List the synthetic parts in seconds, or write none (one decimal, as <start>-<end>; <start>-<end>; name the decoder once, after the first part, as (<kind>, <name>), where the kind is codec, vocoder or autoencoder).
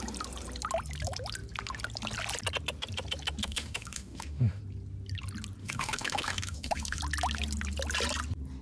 3.4-4.6 (autoencoder, DAC-VAE); 5.6-7.0